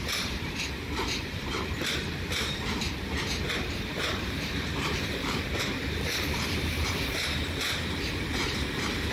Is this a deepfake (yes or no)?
yes